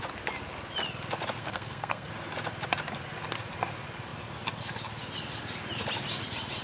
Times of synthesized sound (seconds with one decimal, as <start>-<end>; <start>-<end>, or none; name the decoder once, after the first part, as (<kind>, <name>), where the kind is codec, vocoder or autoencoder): 1.4-2.1 (codec, SNAC)